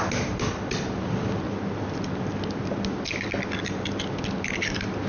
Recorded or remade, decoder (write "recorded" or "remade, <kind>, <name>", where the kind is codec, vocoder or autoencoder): recorded